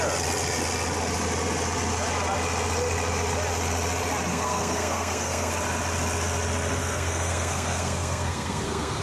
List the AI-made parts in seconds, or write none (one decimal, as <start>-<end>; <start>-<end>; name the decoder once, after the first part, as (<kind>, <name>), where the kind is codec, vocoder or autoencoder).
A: 4.3-5.5 (codec, SNAC); 6.8-9.0